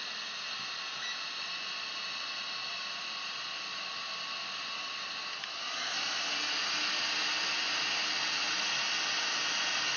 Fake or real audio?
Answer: real